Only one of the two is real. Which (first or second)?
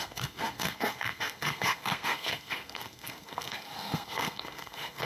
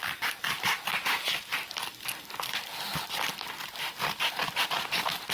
second